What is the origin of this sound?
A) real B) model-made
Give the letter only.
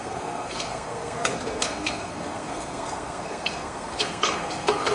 B